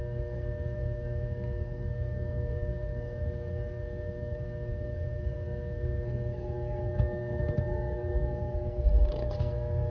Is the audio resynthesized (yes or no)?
yes